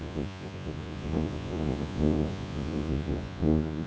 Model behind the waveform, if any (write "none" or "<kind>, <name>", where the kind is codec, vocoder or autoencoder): vocoder, Vocos